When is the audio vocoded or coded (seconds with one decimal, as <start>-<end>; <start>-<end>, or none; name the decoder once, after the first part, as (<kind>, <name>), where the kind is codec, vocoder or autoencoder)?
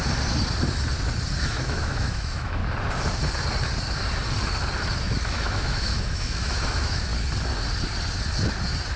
1.4-2.6 (autoencoder, DAC-VAE); 5.3-7.1